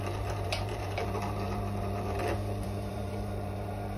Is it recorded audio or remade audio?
remade